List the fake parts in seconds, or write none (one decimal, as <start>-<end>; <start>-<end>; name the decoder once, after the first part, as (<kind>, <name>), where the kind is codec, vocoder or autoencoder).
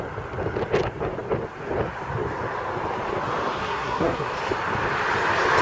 3.6-4.3 (codec, SNAC)